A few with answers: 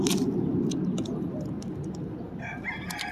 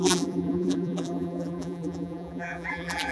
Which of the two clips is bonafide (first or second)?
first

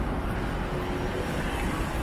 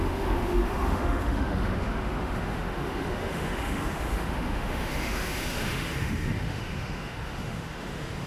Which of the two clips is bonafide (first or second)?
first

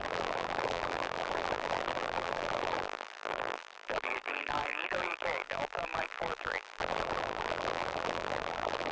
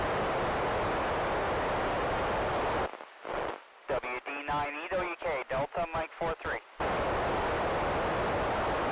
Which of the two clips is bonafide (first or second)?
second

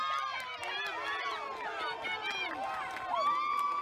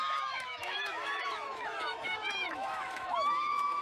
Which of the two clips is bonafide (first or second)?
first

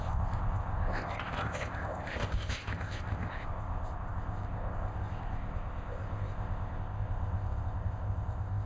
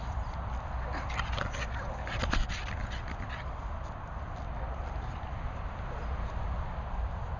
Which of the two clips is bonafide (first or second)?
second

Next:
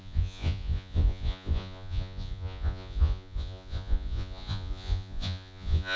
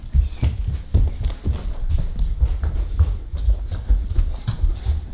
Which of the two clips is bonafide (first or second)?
second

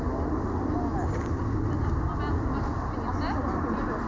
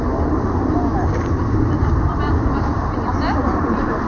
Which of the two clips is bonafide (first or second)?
first